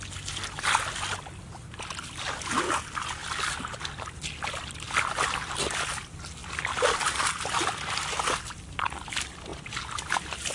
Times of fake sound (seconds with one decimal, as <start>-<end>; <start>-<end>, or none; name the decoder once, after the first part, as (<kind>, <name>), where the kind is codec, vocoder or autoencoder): none